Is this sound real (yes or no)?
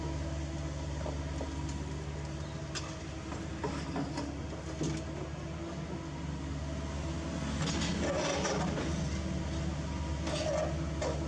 yes